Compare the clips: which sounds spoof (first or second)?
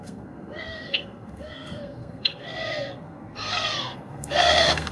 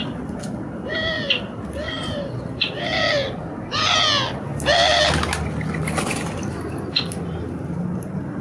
first